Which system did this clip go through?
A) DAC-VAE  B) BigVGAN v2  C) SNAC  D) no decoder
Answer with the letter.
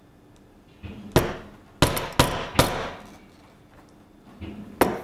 D